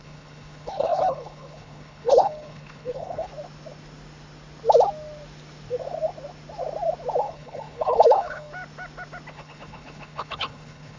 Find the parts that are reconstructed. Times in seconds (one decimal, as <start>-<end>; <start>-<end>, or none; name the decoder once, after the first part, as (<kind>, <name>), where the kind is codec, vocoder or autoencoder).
0.0-3.3 (codec, HILCodec); 7.2-8.5; 9.3-11.0